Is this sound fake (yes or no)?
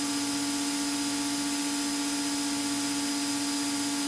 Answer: no